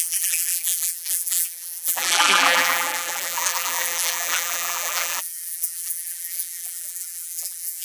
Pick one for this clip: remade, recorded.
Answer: remade